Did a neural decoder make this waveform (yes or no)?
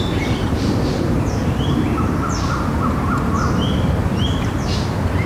yes